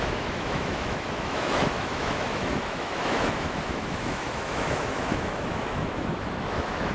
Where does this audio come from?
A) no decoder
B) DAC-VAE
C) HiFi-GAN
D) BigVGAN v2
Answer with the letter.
B